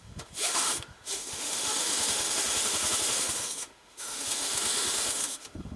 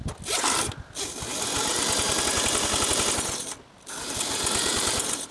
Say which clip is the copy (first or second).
first